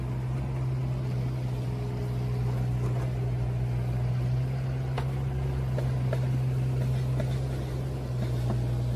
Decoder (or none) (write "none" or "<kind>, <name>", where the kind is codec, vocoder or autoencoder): none